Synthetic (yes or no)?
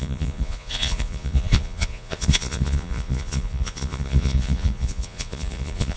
yes